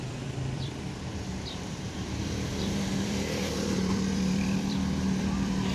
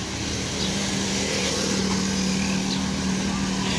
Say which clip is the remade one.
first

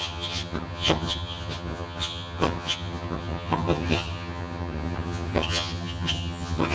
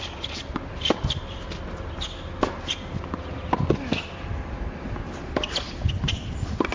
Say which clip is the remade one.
first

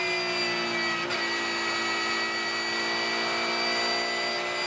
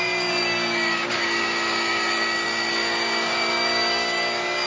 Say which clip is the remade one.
second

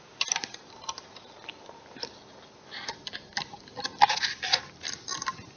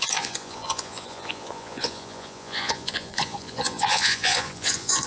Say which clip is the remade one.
second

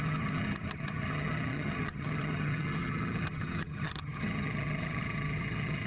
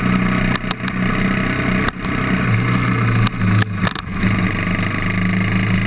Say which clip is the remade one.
first